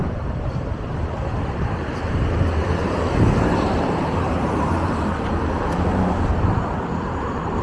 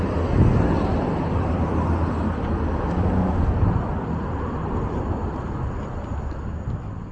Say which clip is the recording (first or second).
second